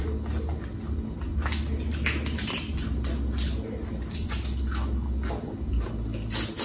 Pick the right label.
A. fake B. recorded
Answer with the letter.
B